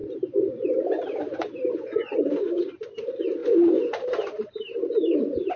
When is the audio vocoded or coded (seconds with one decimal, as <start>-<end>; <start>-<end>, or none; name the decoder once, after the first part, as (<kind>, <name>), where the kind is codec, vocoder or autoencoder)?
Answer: 0.0-5.6 (vocoder, BigVGAN v2)